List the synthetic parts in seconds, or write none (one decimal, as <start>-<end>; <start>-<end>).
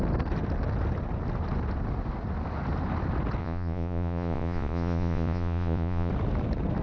3.4-6.1